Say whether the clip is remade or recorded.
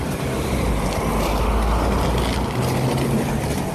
recorded